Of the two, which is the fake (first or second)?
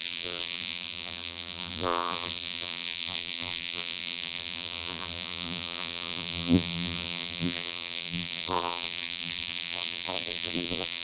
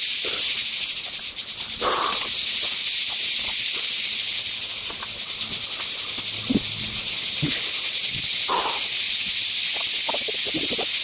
first